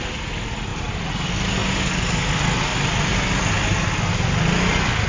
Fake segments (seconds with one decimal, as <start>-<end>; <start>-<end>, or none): none